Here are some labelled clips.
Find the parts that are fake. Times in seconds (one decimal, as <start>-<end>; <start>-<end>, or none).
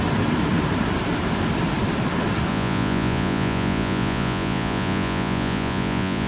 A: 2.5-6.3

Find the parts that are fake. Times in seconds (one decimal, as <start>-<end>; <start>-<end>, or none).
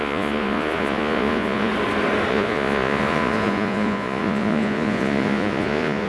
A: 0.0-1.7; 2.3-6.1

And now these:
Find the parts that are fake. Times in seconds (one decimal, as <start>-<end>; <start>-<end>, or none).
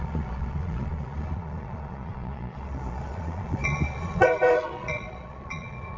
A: 0.0-6.0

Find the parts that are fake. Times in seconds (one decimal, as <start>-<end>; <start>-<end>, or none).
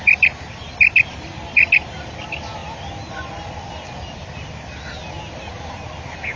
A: none